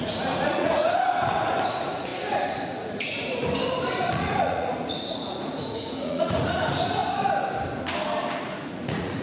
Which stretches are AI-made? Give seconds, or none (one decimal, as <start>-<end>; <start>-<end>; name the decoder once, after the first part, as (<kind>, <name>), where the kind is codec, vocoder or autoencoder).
0.0-3.4 (vocoder, Vocos); 4.0-7.0; 8.4-9.2